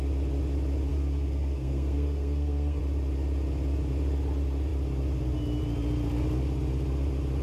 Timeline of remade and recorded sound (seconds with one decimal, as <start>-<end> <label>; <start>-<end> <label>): 0.0-0.9 recorded; 0.9-2.8 remade; 2.8-7.4 recorded